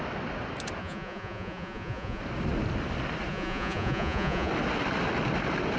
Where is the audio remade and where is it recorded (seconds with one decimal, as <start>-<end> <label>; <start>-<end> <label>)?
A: 0.0-0.8 recorded; 0.8-2.2 remade; 2.2-3.3 recorded; 3.3-4.5 remade; 4.5-5.8 recorded